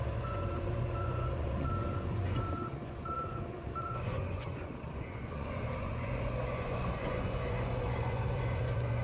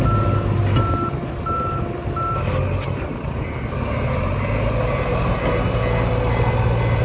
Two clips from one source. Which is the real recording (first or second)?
second